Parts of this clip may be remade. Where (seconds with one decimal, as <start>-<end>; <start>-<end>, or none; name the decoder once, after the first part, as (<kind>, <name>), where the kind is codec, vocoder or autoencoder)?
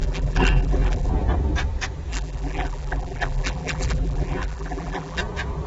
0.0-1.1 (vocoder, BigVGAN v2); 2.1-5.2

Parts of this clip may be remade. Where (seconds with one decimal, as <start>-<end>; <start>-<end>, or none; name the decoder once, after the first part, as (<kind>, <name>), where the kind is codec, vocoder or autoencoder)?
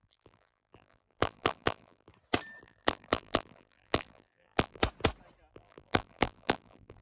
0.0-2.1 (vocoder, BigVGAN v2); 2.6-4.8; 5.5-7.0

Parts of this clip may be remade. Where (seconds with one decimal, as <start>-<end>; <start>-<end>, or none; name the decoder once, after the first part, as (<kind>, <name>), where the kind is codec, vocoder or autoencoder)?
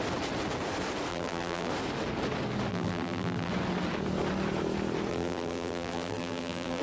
1.1-1.7 (vocoder, BigVGAN v2); 2.7-3.5; 5.1-6.8